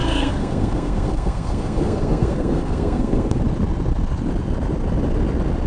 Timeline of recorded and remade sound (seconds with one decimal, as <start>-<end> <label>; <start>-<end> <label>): 0.0-3.4 remade; 3.4-5.7 recorded